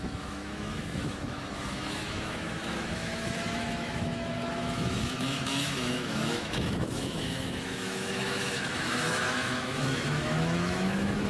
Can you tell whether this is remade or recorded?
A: remade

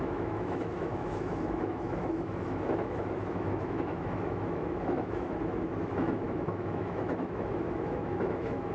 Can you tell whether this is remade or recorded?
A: remade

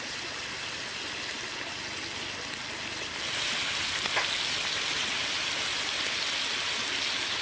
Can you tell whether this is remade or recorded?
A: recorded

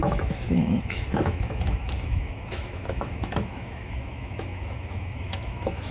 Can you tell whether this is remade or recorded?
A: remade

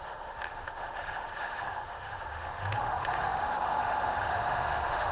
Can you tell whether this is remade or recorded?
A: remade